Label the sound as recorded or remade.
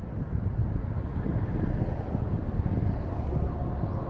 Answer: recorded